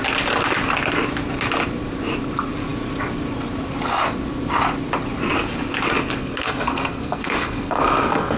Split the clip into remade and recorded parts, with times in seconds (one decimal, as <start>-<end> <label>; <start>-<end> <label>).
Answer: 0.0-6.2 recorded; 6.2-8.4 remade